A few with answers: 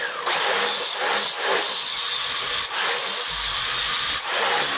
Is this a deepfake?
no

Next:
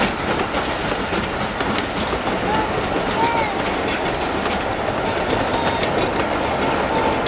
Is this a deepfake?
no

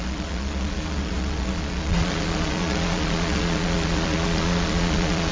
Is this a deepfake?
yes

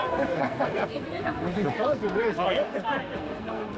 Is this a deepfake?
yes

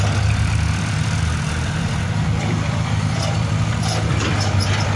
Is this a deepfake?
yes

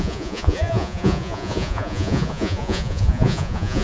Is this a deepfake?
yes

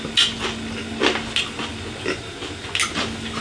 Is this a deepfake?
no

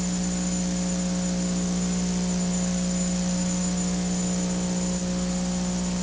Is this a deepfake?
no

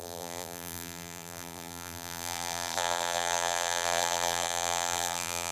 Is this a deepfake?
yes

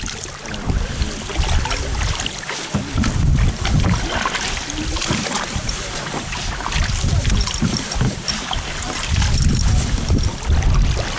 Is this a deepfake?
no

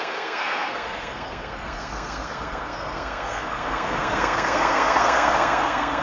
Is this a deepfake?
yes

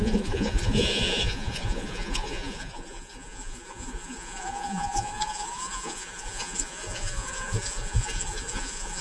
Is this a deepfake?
yes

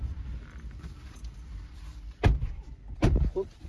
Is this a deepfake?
yes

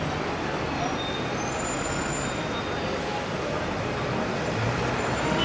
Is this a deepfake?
no